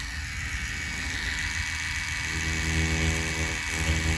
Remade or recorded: recorded